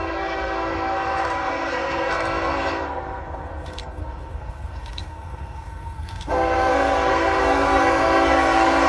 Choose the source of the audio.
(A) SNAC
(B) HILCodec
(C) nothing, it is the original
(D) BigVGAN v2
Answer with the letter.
A